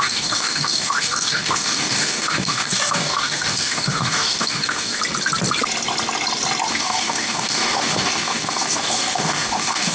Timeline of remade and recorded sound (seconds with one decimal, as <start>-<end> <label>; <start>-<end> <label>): 0.0-5.0 remade; 5.0-6.7 recorded; 6.7-9.9 remade